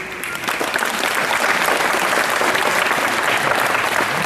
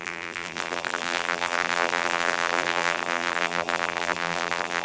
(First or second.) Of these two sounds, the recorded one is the first